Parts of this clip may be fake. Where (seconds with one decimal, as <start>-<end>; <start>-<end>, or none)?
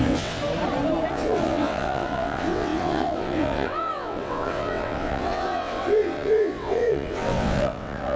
0.0-0.4; 1.1-8.2